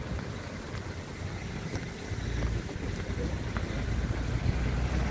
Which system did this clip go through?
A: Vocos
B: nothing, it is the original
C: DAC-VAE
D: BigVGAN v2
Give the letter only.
B